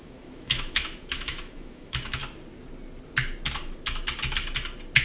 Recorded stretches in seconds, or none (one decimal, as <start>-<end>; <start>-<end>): 2.2-5.0